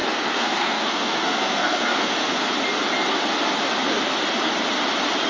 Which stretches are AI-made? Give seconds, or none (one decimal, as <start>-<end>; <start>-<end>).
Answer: 0.0-2.5

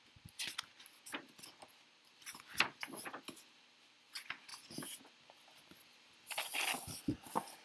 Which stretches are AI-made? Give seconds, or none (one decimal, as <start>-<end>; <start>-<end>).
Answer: none

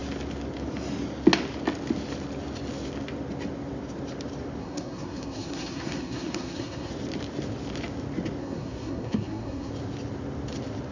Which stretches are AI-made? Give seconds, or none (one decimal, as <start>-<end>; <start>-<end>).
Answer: 4.6-6.9; 8.4-9.7

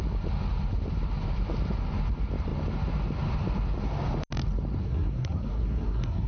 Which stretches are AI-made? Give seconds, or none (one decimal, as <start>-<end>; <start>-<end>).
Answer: 4.8-6.3

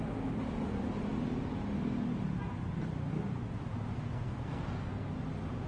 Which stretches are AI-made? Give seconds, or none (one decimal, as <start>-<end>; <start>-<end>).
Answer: 3.9-5.1

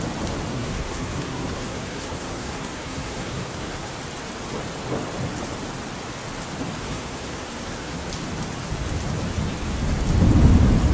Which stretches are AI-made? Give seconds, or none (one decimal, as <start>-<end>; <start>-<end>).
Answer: 0.5-3.9; 6.8-8.1

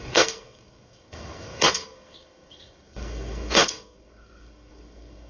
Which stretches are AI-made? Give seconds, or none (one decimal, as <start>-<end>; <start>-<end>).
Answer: 0.0-5.3

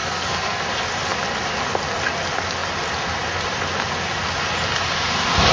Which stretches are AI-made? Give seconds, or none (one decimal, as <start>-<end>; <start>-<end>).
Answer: 0.0-0.6